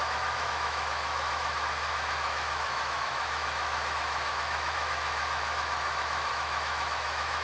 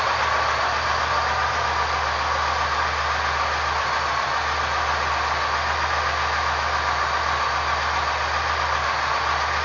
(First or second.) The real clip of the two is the second